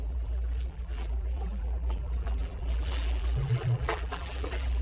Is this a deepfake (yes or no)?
yes